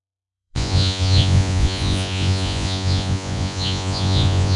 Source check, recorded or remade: remade